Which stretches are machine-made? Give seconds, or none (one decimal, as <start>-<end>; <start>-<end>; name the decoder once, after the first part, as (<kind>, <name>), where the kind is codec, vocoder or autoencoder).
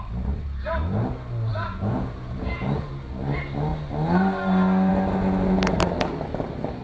1.5-2.9 (vocoder, Vocos)